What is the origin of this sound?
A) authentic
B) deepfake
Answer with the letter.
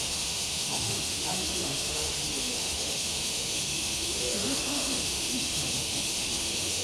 B